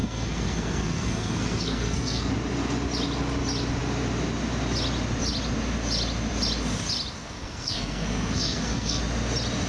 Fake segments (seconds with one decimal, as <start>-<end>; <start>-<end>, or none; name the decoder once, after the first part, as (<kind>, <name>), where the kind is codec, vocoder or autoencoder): 0.0-2.3 (codec, SNAC); 7.2-9.0